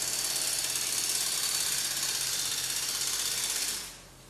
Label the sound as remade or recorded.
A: recorded